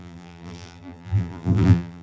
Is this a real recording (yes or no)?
no